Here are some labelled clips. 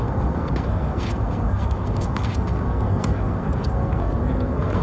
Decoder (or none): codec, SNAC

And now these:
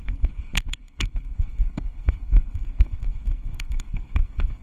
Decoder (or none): codec, SNAC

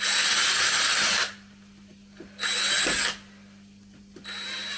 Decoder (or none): none